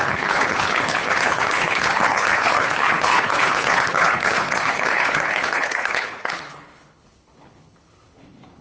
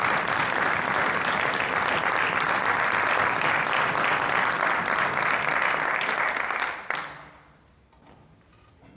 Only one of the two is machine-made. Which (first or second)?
first